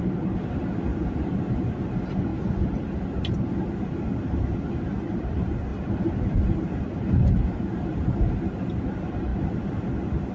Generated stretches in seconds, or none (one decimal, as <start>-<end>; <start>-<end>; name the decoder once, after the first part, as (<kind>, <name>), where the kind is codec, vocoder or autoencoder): 0.9-1.4 (vocoder, BigVGAN v2); 5.7-6.8